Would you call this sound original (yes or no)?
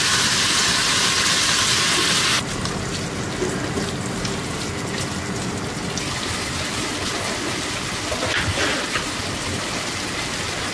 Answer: yes